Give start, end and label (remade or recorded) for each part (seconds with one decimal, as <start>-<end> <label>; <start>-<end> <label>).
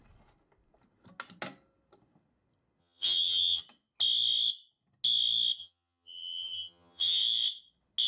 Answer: 0.0-2.8 recorded; 2.8-3.6 remade; 3.6-5.6 recorded; 5.6-7.2 remade; 7.2-8.1 recorded